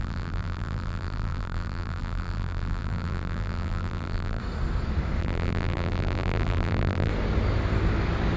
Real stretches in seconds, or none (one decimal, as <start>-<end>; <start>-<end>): 4.4-5.2; 7.1-8.4